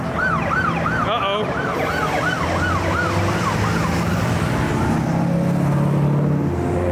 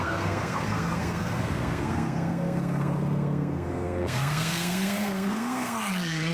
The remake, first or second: second